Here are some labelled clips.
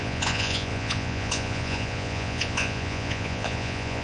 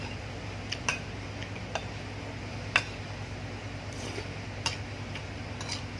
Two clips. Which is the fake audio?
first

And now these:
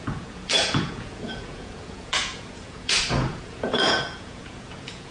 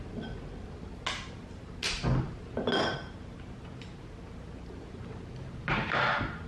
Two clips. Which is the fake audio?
first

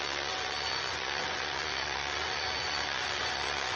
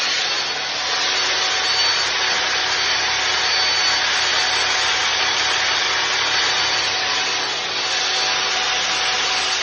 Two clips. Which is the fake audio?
first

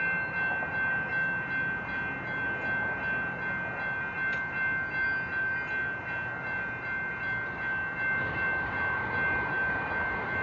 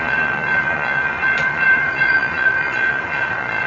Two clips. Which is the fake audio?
second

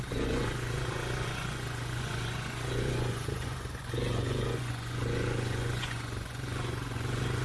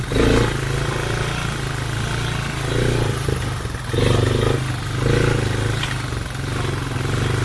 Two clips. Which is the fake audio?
first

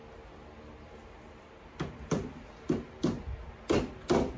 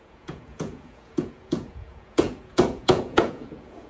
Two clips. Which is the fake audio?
second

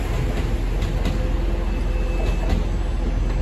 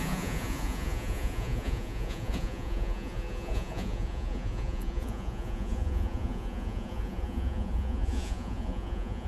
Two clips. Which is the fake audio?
second